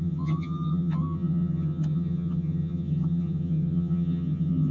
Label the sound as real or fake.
fake